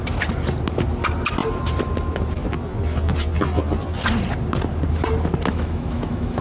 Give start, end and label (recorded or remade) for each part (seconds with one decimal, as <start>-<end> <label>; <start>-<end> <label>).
0.0-5.5 recorded; 5.5-6.4 remade